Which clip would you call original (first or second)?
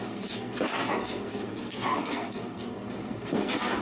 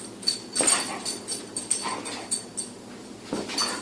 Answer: second